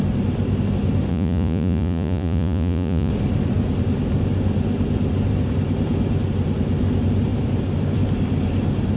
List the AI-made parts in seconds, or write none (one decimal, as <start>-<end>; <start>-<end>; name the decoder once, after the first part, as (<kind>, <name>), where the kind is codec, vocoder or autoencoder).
1.1-3.1 (vocoder, Vocos)